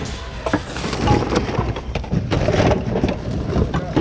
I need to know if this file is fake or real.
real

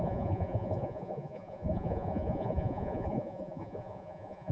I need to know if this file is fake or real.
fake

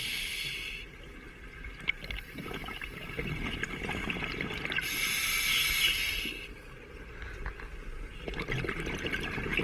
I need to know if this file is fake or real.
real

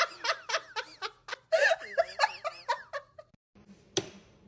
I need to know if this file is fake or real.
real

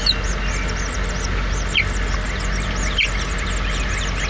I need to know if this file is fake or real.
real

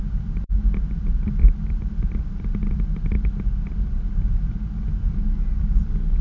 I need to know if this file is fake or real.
real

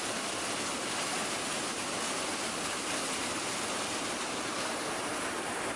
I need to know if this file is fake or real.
real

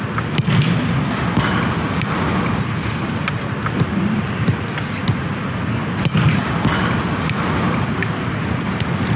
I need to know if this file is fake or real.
fake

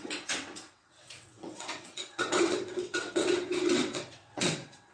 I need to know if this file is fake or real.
fake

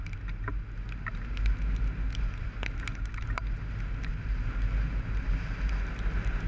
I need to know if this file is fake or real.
real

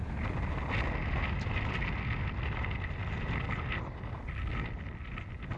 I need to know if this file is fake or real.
real